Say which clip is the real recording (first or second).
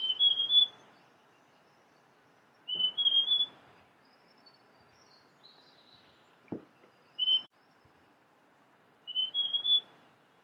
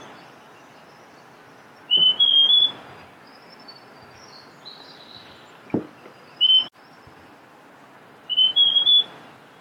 second